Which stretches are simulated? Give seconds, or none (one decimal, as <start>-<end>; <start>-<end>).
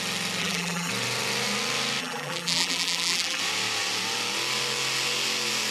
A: 0.4-0.9; 2.0-3.4